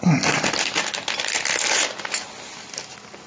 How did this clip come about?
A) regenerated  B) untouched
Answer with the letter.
B